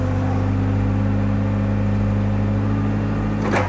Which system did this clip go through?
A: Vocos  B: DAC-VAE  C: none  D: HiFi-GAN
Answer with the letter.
C